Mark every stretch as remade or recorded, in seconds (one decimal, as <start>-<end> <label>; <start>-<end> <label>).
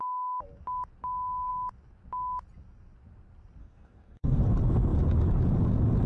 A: 0.0-3.6 recorded; 3.6-4.4 remade; 4.4-6.1 recorded